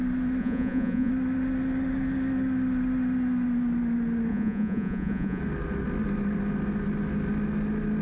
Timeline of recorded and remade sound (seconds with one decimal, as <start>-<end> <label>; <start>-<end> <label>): 0.0-0.4 recorded; 0.4-1.1 remade; 1.1-4.3 recorded; 4.3-5.4 remade; 5.4-8.0 recorded